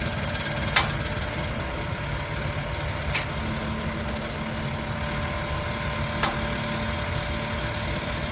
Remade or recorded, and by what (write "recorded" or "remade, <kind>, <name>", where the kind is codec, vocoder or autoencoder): recorded